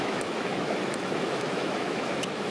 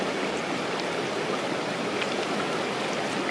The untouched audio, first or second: second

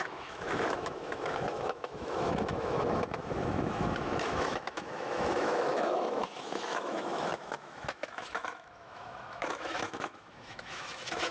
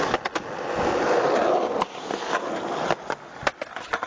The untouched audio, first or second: second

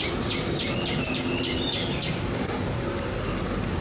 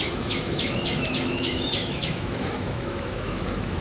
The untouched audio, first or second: first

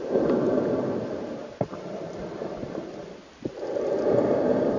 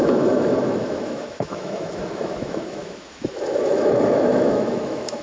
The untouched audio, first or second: first